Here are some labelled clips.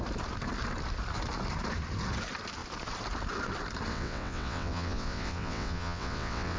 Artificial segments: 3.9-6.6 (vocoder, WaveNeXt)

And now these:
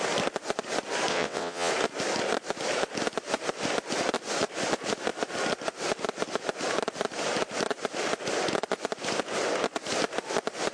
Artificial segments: 1.1-1.7 (vocoder, WaveNeXt)

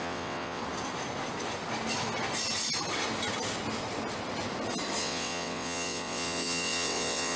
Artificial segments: 0.0-0.6 (vocoder, WaveNeXt); 5.0-7.4

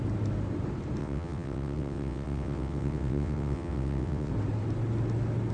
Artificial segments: 1.0-4.3 (vocoder, WaveNeXt)

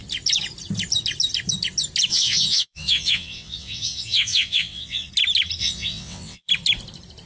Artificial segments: 2.1-5.1 (vocoder, WaveNeXt); 5.6-6.5

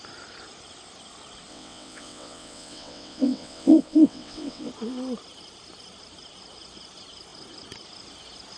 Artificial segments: 1.5-4.7 (vocoder, WaveNeXt)

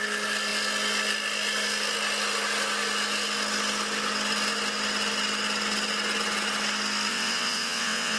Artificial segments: 7.1-8.2 (vocoder, WaveNeXt)